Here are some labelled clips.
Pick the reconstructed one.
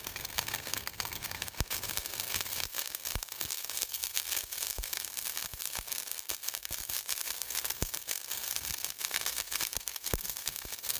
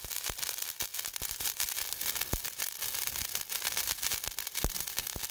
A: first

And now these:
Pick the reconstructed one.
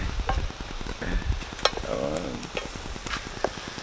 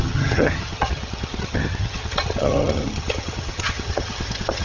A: second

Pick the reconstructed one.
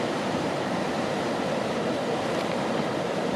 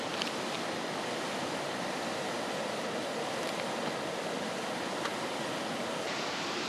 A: first